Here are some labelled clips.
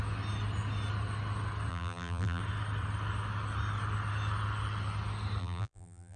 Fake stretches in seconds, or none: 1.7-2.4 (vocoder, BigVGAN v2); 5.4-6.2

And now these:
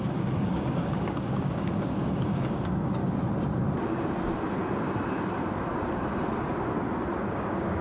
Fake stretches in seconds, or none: 0.0-3.0 (codec, DAC); 7.3-7.8

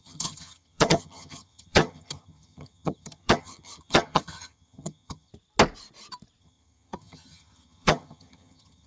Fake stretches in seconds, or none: 0.0-5.3 (vocoder, HiFi-GAN); 6.4-8.9

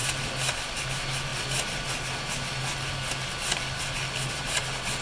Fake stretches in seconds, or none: none

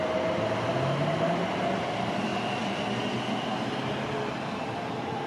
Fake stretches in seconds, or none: none

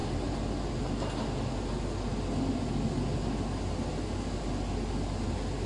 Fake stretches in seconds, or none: none

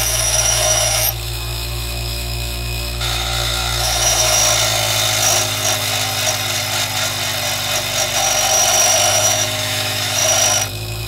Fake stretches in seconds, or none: 0.0-4.4 (autoencoder, DAC-VAE); 9.1-10.2; 10.7-11.1

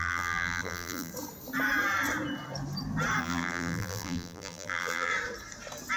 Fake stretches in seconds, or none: 0.0-1.1 (vocoder, BigVGAN v2); 3.2-5.1